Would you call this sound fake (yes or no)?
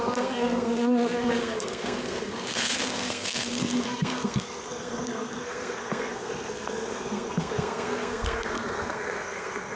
yes